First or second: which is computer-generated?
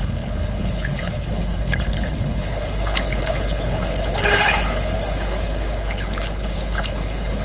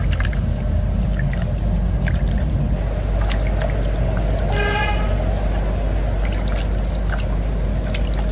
first